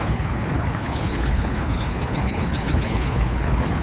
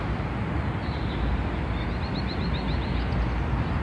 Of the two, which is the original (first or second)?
second